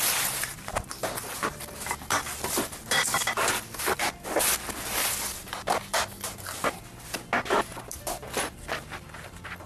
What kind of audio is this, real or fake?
real